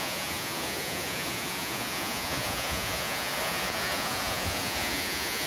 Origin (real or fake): fake